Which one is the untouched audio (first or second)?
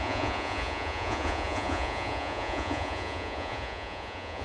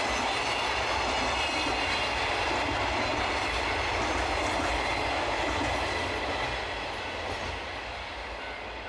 second